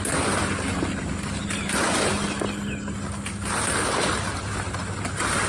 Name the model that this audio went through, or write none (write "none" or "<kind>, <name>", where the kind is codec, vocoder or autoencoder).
none